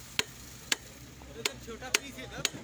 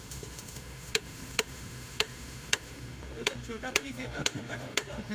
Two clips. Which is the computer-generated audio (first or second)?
second